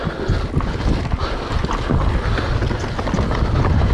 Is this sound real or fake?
real